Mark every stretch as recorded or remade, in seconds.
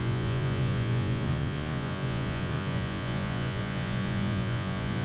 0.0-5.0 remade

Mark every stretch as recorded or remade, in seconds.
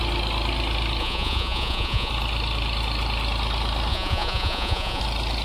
0.0-1.0 recorded; 1.0-2.1 remade; 2.1-3.9 recorded; 3.9-5.0 remade; 5.0-5.4 recorded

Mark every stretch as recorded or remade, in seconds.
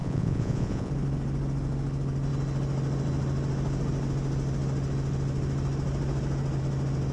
0.0-0.9 remade; 0.9-7.1 recorded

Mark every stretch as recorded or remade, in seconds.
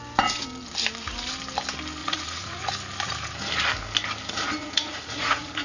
0.0-2.0 recorded; 2.0-2.7 remade; 2.7-4.6 recorded; 4.6-5.6 remade